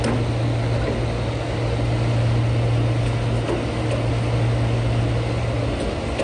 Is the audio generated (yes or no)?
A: no